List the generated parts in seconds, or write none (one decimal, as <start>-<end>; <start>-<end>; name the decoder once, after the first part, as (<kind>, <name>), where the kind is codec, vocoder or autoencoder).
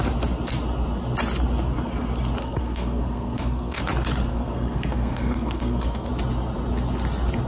2.4-3.8 (codec, SNAC); 4.3-6.1